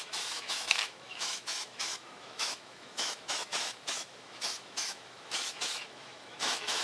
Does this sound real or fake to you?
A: fake